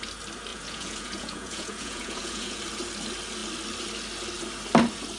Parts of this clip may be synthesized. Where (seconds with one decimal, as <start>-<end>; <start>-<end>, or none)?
0.5-2.6